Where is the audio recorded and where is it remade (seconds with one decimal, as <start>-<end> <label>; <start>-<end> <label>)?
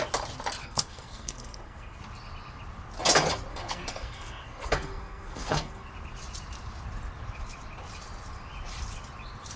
0.0-0.6 recorded; 0.6-2.0 remade; 2.0-3.5 recorded; 3.5-5.9 remade; 5.9-9.6 recorded